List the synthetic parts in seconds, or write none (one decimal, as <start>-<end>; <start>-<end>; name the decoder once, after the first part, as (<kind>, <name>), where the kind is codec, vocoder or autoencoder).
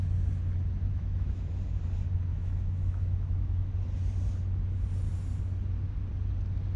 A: 0.9-1.5 (autoencoder, DAC-VAE); 2.3-3.7